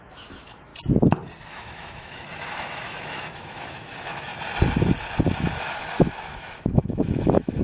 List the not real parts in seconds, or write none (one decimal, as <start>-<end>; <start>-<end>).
0.0-0.7; 1.5-4.3; 5.6-7.6